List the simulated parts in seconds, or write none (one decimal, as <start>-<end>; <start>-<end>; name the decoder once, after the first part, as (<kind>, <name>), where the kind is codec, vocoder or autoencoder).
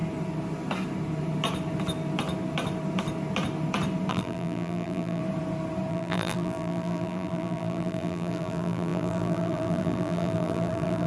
4.1-5.2 (vocoder, BigVGAN v2); 5.9-11.1